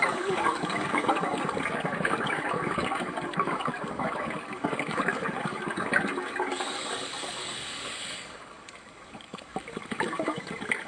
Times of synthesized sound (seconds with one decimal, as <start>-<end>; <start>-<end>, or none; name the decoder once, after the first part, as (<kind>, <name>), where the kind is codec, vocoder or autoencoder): 0.0-10.9 (codec, DAC)